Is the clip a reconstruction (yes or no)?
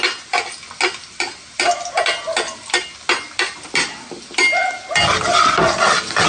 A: no